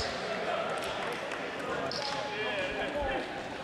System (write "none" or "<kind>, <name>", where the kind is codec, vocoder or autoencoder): none